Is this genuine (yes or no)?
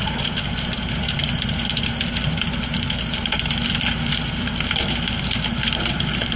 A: yes